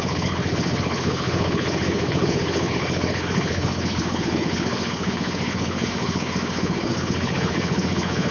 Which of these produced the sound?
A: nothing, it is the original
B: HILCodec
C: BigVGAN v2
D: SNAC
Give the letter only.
B